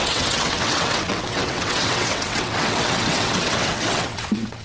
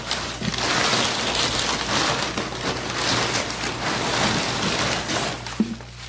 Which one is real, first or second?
second